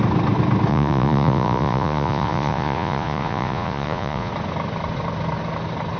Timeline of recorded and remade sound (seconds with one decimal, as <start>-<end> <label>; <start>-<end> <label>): 0.0-0.7 recorded; 0.7-4.3 remade; 4.3-6.0 recorded